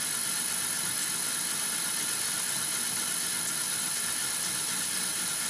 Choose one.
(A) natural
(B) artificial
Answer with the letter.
A